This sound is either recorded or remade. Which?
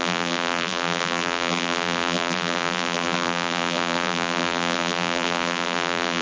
remade